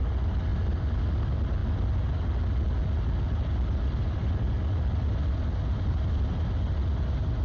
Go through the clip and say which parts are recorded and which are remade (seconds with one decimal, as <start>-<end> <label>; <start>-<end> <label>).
0.0-7.4 recorded